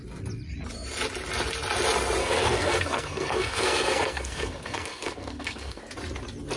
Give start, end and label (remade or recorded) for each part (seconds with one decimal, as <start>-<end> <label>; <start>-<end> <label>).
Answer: 0.0-2.2 recorded; 2.2-5.8 remade; 5.8-6.6 recorded